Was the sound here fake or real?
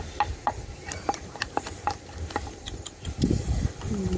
fake